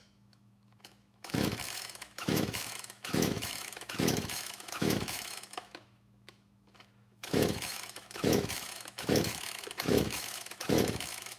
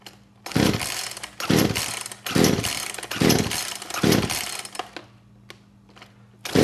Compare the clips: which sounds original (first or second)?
second